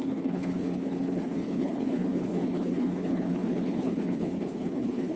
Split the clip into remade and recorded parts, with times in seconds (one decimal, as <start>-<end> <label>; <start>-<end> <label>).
0.0-5.2 remade